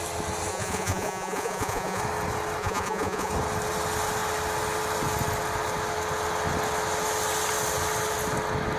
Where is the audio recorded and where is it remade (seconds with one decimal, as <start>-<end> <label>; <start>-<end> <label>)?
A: 0.0-0.5 recorded; 0.5-2.0 remade; 2.0-2.6 recorded; 2.6-3.3 remade; 3.3-8.8 recorded